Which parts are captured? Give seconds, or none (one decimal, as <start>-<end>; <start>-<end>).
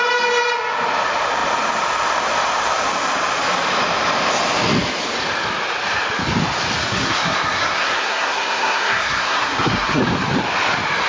0.0-6.8; 10.0-11.1